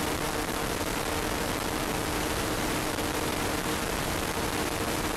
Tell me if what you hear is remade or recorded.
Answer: remade